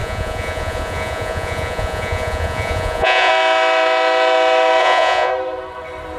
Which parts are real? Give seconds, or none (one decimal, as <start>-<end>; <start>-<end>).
3.3-4.8; 5.3-6.2